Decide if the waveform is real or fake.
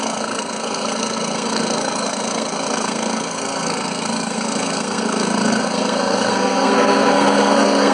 fake